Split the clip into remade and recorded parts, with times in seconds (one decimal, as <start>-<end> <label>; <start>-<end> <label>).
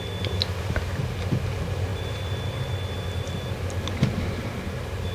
0.0-5.1 recorded